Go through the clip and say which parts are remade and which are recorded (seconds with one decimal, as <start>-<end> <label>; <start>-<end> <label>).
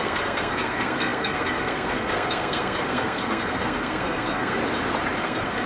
0.0-4.6 remade; 4.6-5.2 recorded; 5.2-5.7 remade